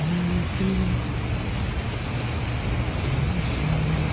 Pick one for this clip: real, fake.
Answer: real